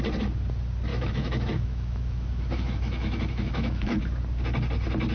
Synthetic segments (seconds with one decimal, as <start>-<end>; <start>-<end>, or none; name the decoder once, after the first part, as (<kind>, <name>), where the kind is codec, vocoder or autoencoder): 0.9-4.0 (autoencoder, DAC-VAE)